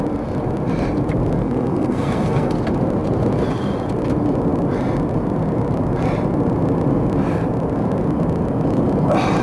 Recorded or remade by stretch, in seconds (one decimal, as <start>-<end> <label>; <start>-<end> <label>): 0.0-1.4 recorded; 1.4-2.6 remade; 2.6-9.4 recorded